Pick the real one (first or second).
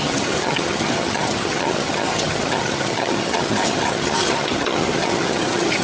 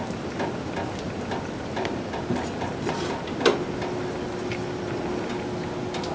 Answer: second